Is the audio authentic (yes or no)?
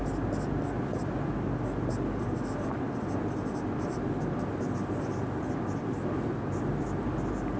yes